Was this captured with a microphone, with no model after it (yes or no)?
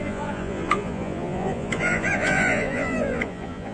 no